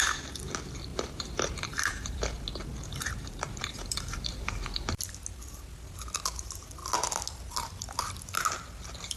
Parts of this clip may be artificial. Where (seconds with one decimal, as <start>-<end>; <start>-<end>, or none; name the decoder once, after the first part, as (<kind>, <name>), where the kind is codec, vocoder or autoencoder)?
0.9-2.4 (vocoder, BigVGAN v2); 2.9-5.0